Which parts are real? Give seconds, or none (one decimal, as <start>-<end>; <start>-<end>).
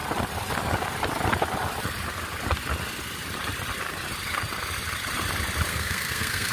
0.0-5.7